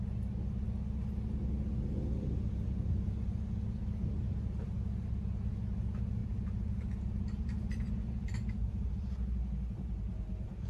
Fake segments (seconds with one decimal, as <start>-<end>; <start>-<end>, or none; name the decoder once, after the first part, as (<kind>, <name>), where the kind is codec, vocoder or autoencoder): 3.8-5.1 (vocoder, BigVGAN v2); 6.2-7.9